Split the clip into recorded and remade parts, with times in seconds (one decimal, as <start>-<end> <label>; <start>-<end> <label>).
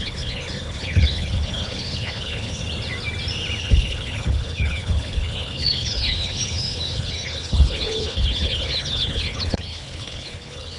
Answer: 0.0-2.6 remade; 2.6-3.6 recorded; 3.6-10.8 remade